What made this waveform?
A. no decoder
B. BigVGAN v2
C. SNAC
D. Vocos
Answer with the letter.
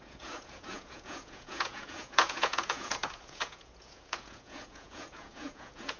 D